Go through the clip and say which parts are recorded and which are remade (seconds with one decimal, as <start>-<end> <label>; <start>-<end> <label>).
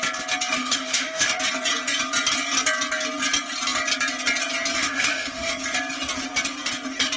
0.0-0.6 recorded; 0.6-1.4 remade; 1.4-4.8 recorded; 4.8-5.5 remade; 5.5-7.2 recorded